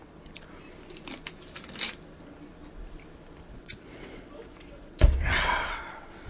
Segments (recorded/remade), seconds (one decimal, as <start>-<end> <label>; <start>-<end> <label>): 0.0-3.5 recorded; 3.5-6.3 remade